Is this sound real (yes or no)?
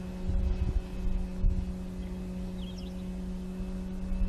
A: yes